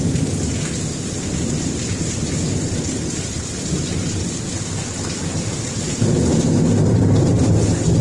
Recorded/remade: recorded